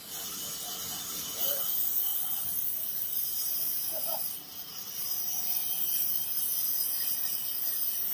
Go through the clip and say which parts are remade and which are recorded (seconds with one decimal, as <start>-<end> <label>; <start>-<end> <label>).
0.0-2.1 recorded; 2.1-5.4 remade; 5.4-8.1 recorded